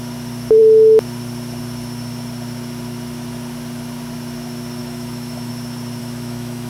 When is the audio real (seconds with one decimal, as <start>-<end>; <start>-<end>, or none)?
0.0-4.8; 5.5-6.0